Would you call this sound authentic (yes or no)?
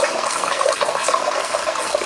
no